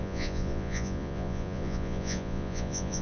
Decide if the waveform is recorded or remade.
remade